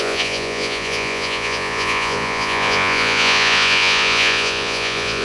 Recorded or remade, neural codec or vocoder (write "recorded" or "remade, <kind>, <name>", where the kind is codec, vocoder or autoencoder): remade, vocoder, Vocos